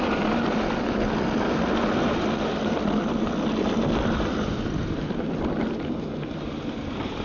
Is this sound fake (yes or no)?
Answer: no